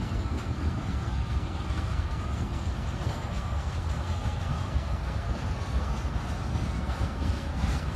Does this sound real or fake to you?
fake